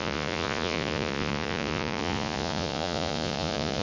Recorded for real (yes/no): no